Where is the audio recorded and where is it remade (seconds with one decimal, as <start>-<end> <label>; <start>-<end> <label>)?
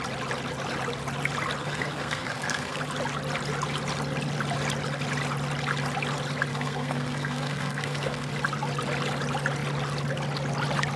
0.0-1.6 recorded; 1.6-2.8 remade; 2.8-6.5 recorded; 6.5-8.3 remade; 8.3-11.0 recorded